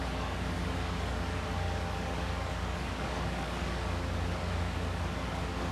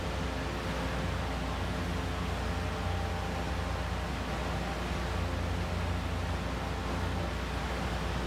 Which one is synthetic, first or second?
first